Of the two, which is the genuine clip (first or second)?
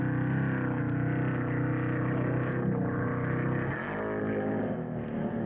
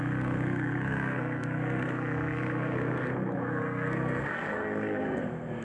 first